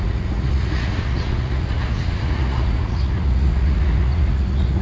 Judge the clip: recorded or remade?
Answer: remade